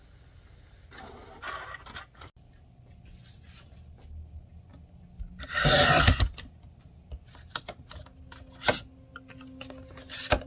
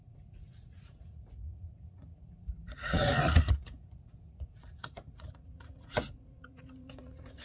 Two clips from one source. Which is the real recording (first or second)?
first